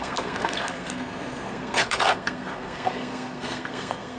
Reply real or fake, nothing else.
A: fake